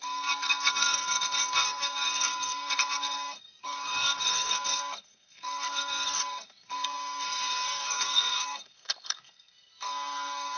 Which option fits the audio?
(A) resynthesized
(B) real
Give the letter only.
A